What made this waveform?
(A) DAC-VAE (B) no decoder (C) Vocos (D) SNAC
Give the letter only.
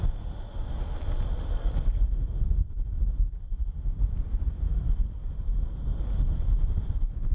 B